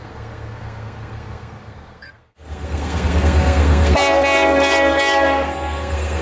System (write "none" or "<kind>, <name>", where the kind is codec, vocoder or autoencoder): codec, SNAC